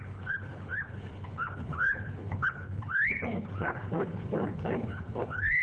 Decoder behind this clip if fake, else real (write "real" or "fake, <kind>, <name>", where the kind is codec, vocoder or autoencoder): fake, codec, HILCodec